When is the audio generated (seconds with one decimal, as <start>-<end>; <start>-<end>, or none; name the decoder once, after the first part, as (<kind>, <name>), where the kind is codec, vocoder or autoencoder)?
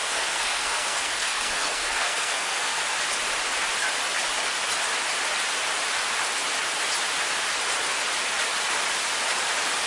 0.0-2.8 (codec, SNAC)